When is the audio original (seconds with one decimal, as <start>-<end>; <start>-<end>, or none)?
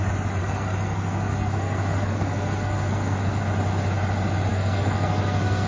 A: 0.0-0.4; 3.4-4.5